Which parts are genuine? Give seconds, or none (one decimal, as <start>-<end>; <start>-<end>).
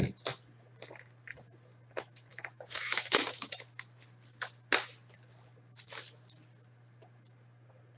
0.0-2.3; 3.5-8.0